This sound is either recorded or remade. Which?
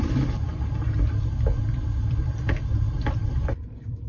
remade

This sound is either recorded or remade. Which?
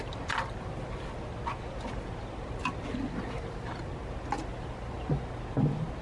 recorded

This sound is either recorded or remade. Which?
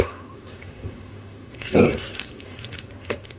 remade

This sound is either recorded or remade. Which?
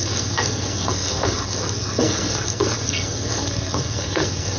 remade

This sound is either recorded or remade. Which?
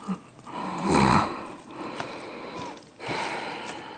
recorded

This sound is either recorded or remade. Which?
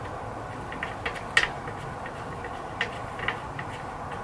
recorded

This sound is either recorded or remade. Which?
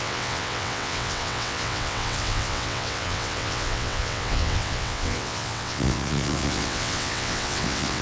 remade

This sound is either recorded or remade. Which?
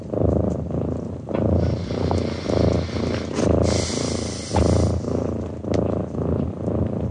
recorded